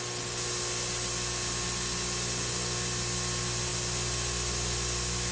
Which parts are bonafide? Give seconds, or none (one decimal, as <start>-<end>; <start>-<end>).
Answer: 0.0-5.3